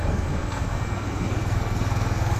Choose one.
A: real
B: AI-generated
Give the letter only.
B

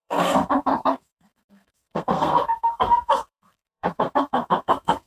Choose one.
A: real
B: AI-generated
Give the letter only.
B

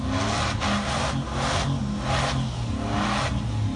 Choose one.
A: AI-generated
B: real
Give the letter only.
B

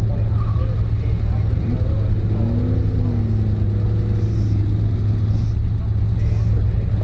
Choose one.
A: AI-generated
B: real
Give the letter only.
B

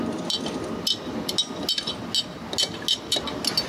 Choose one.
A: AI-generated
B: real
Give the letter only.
B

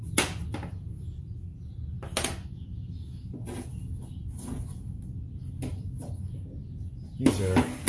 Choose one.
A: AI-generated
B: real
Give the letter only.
B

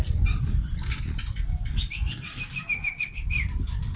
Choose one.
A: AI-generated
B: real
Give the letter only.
B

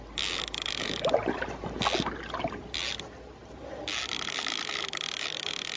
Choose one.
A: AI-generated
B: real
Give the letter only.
B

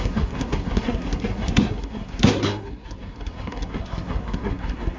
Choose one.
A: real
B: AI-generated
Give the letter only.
B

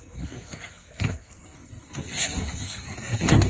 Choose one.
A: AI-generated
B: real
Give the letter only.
A